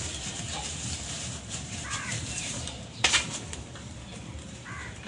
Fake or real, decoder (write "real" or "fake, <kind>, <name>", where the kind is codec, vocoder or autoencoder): fake, vocoder, BigVGAN v2